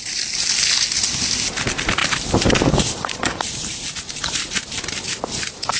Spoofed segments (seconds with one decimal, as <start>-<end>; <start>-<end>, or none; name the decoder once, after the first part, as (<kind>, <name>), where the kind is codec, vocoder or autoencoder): 2.0-5.8 (vocoder, BigVGAN v2)